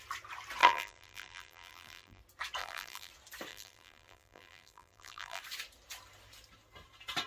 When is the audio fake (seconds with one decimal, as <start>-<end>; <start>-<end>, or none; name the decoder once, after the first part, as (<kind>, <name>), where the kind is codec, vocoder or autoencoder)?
0.6-2.2 (vocoder, BigVGAN v2); 2.6-3.1; 3.5-5.4